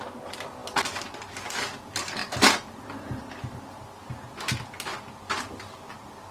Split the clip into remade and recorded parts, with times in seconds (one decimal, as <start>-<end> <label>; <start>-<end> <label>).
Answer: 0.0-6.3 recorded